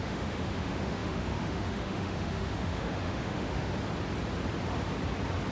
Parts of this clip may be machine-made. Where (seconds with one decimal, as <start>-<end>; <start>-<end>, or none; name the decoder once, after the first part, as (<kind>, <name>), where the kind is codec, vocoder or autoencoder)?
0.0-3.7 (autoencoder, DAC-VAE)